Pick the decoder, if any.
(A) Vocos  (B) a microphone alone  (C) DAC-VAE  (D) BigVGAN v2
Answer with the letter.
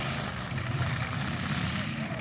D